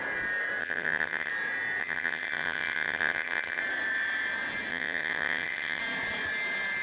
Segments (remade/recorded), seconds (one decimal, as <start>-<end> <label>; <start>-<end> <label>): 0.0-0.6 recorded; 0.6-1.3 remade; 1.3-1.8 recorded; 1.8-3.6 remade; 3.6-4.7 recorded; 4.7-5.8 remade; 5.8-6.8 recorded